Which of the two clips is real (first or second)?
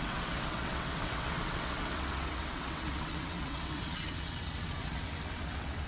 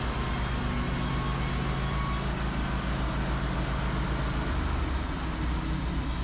second